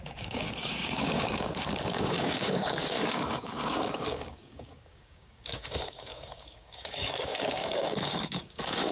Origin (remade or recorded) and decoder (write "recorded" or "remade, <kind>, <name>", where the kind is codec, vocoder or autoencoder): remade, codec, DAC